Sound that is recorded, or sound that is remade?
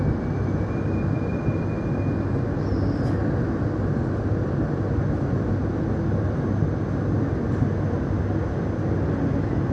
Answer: recorded